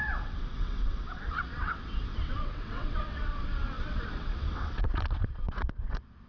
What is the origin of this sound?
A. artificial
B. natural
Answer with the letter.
A